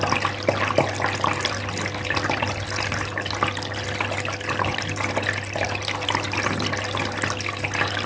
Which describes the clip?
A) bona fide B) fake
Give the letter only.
A